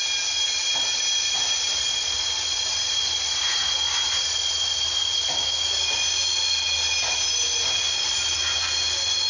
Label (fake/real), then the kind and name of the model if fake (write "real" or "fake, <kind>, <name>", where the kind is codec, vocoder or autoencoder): real